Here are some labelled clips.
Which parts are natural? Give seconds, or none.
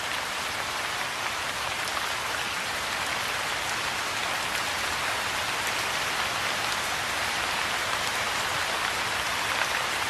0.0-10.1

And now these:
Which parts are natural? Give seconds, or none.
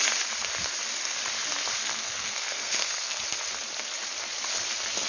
0.0-1.8; 3.2-5.1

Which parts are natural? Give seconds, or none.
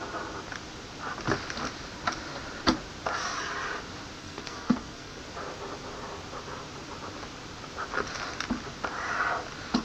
0.0-4.2; 5.2-9.8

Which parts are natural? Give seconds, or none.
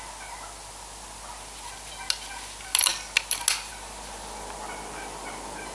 0.0-5.7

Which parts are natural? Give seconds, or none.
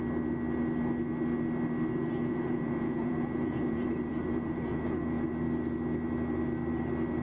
0.0-2.2; 5.3-7.2